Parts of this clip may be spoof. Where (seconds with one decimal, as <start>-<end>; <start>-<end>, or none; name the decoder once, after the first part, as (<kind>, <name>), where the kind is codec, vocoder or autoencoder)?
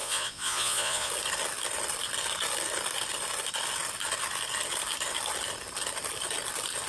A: 0.0-1.1 (vocoder, Vocos)